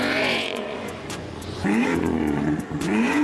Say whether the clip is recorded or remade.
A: remade